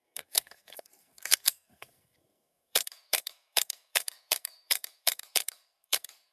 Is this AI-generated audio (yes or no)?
yes